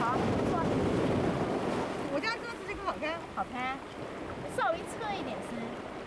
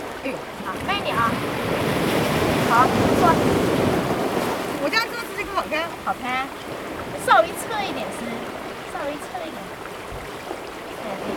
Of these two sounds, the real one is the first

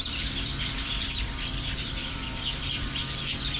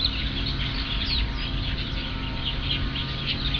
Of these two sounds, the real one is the second